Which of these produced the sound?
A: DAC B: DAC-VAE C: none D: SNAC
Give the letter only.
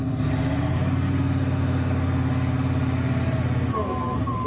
C